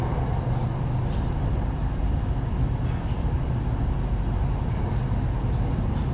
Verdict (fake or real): real